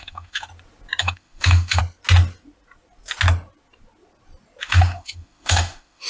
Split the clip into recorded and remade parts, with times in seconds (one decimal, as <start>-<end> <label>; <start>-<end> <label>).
0.0-0.5 remade; 0.5-1.0 recorded; 1.0-1.8 remade; 1.8-4.6 recorded; 4.6-6.1 remade